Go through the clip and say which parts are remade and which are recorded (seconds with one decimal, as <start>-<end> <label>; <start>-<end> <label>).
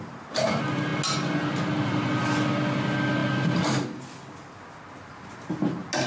0.0-6.1 recorded